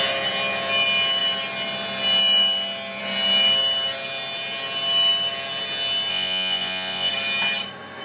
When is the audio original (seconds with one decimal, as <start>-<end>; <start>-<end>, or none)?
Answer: 0.0-6.1; 7.1-8.0